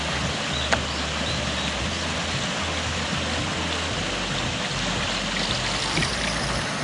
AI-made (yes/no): no